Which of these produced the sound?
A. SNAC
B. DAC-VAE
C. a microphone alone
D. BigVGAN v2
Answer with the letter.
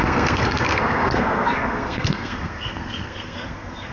A